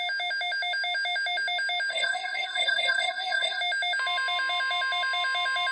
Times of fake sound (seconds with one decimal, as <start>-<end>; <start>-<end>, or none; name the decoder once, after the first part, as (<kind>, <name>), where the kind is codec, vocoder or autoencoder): 1.9-3.6 (codec, SNAC)